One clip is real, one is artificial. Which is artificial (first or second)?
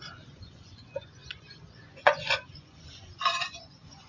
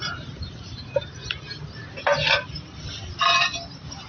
first